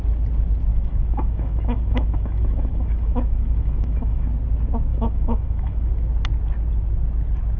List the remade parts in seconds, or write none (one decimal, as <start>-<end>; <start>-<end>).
0.7-4.3; 4.9-5.9